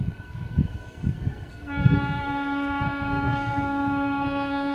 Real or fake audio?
fake